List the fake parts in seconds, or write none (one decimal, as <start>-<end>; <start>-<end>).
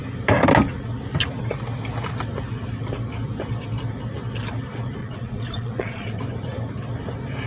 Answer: 5.0-6.2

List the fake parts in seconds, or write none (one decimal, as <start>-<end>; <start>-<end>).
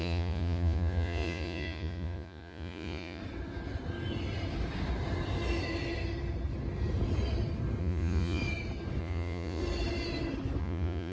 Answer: 0.0-3.2; 7.8-8.4; 9.0-9.6; 10.6-11.1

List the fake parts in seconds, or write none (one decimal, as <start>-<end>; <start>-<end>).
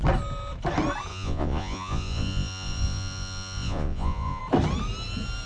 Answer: 1.1-4.4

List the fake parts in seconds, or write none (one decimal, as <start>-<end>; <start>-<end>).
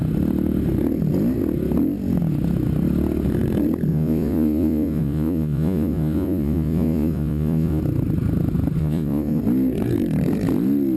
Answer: 3.9-7.8; 8.8-9.4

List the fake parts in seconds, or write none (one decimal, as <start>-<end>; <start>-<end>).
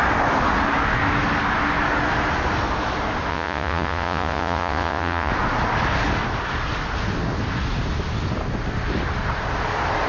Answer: 3.3-5.3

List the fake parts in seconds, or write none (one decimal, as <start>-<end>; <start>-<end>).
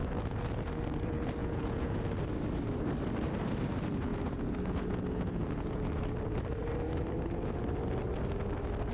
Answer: 0.0-0.7; 1.4-2.1; 4.1-6.0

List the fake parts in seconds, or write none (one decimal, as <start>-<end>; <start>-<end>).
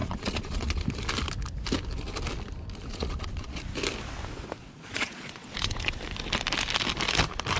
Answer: 0.0-0.8; 2.9-3.6; 4.6-5.8